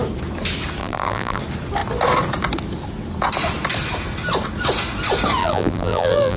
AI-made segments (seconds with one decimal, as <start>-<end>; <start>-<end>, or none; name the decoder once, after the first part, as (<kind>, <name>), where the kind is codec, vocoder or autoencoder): 0.8-1.4 (vocoder, BigVGAN v2); 5.4-6.4